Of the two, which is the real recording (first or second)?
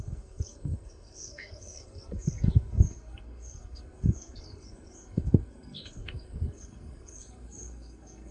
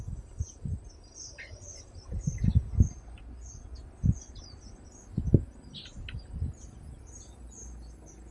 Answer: second